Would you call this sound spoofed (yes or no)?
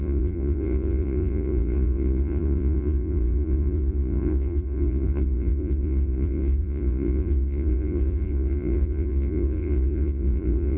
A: yes